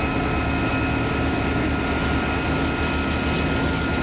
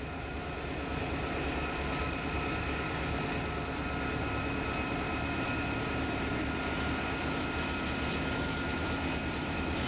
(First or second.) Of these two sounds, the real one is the first